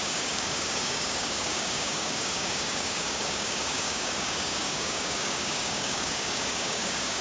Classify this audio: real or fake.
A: fake